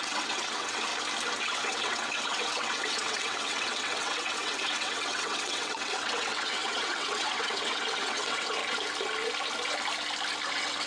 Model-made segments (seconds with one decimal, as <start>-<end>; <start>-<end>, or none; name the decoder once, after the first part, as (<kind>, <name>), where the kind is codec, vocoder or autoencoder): 0.0-0.9 (vocoder, WaveNeXt); 1.4-8.6; 10.5-10.9